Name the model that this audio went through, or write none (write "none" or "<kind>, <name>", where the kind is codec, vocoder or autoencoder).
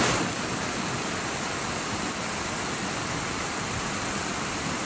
none